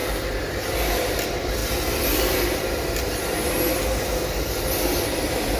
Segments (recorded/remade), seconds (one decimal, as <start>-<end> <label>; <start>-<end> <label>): 0.0-0.5 recorded; 0.5-1.6 remade; 1.6-5.0 recorded; 5.0-5.6 remade